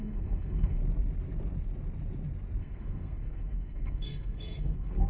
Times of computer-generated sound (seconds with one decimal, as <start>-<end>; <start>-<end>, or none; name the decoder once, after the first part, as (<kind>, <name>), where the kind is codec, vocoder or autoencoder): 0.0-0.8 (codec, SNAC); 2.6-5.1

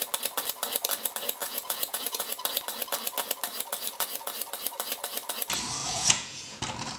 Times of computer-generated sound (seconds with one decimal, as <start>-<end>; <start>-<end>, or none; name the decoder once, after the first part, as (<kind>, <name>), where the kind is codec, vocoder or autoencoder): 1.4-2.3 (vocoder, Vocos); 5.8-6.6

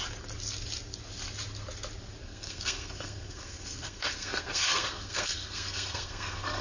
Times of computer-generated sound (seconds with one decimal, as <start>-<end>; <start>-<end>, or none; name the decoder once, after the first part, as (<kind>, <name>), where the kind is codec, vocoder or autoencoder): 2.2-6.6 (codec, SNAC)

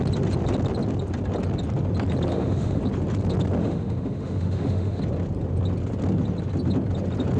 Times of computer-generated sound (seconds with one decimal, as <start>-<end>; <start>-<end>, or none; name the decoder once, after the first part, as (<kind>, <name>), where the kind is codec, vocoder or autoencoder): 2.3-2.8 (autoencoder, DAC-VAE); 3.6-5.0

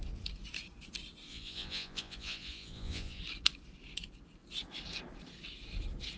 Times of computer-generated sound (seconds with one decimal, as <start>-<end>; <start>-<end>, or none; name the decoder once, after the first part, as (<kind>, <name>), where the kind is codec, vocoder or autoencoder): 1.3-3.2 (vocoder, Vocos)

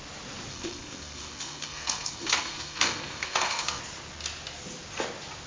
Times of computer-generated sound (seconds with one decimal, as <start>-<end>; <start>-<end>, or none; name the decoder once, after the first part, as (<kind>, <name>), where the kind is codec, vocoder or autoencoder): 0.5-3.8 (codec, SNAC)